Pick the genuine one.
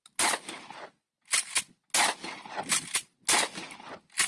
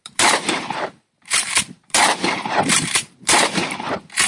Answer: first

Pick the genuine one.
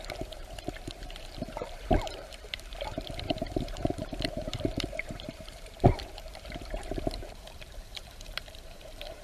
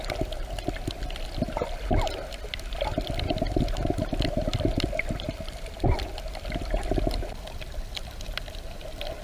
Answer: second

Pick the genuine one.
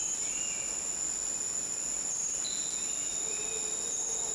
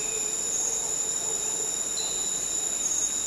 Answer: first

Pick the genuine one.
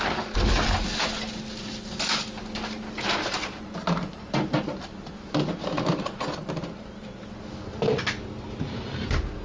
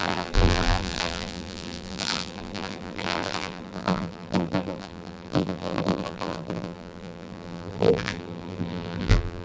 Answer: first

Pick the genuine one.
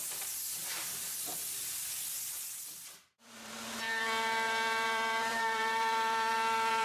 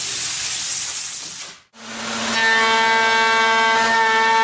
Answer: second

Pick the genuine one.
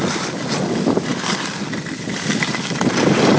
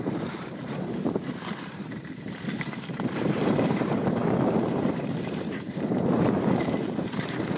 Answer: first